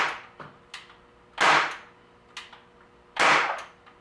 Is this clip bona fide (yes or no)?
yes